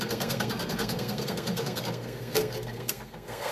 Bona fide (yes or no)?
no